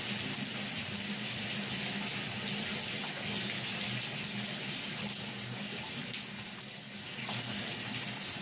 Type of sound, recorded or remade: recorded